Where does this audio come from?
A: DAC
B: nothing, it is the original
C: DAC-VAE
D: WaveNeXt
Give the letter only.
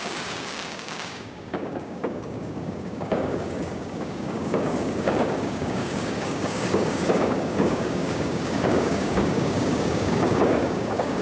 A